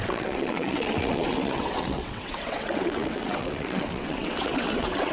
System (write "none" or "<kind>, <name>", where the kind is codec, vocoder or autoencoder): vocoder, WaveNeXt